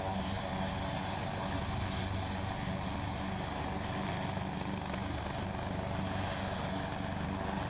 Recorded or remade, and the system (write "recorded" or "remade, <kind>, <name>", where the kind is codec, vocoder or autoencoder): recorded